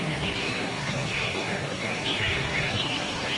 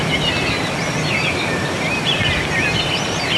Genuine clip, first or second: second